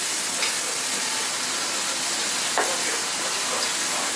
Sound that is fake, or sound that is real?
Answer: real